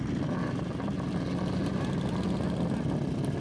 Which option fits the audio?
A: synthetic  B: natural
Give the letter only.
B